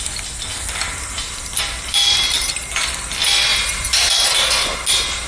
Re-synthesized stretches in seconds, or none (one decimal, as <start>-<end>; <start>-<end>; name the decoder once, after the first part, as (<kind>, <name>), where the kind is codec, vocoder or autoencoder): 0.5-2.5 (vocoder, BigVGAN v2); 3.5-4.1